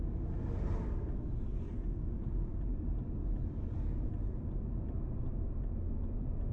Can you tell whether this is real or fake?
real